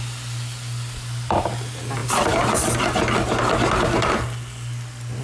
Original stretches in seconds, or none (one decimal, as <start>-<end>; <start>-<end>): 0.0-5.2